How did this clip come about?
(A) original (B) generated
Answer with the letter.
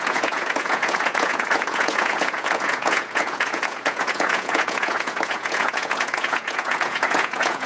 B